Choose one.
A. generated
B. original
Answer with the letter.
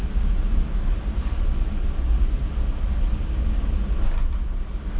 B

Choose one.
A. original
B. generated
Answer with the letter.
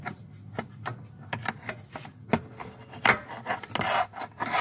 A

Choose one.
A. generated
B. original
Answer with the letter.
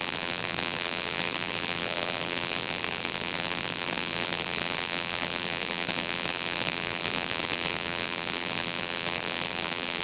A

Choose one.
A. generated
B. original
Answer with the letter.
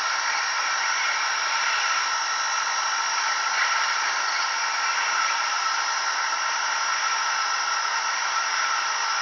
A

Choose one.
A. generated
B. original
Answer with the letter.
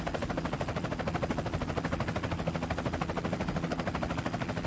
B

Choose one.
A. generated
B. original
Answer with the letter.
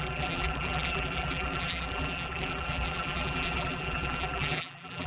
A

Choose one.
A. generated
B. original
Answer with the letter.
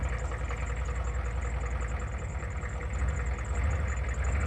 B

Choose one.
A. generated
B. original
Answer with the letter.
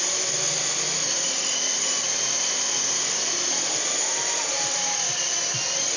B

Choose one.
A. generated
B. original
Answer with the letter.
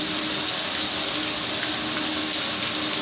B